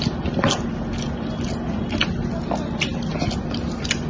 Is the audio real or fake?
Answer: real